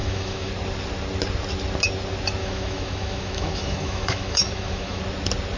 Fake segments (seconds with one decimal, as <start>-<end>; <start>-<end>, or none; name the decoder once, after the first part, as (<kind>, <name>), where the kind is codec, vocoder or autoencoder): 0.0-0.5 (autoencoder, DAC-VAE); 2.4-5.0